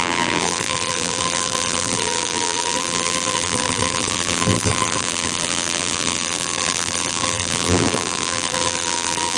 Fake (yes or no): yes